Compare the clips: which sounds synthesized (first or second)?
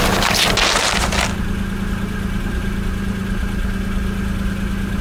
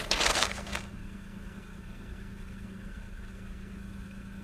second